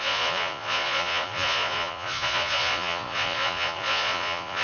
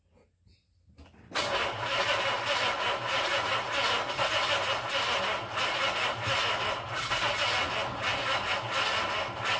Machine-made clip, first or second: first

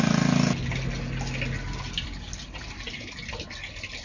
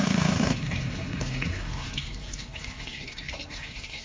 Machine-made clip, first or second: second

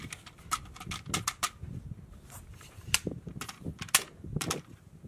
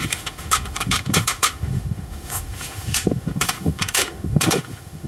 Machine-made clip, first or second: second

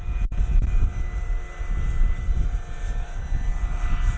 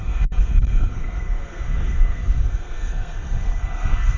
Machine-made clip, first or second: second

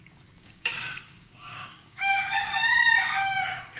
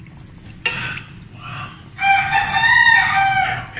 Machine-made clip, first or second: first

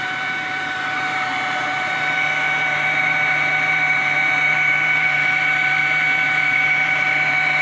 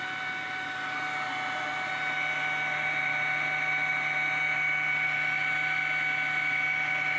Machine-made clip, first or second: first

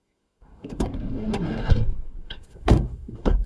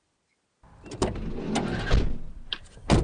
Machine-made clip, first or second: first